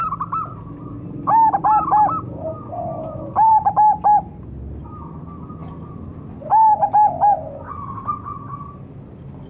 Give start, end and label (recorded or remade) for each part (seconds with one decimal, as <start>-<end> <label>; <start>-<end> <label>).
0.0-9.5 recorded